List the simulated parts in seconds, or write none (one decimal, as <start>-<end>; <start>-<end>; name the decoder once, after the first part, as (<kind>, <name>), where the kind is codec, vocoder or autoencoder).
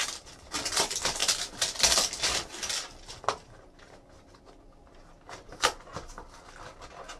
none